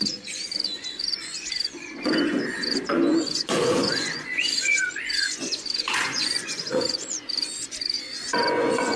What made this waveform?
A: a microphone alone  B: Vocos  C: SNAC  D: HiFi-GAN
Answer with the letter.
B